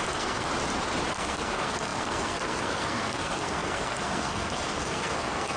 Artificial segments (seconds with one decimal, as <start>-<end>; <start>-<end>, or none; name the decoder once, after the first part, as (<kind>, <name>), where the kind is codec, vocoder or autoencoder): 0.0-0.5 (codec, SNAC); 1.1-5.6